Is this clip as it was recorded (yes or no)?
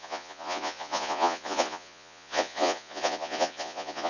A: no